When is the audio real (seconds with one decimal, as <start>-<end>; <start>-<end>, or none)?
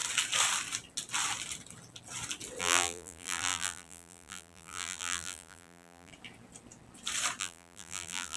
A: 0.0-2.6; 6.1-7.4